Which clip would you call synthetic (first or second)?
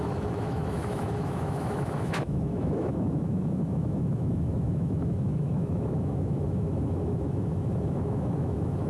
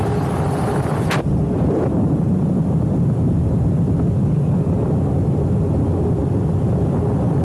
first